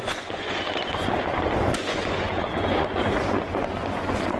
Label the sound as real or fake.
fake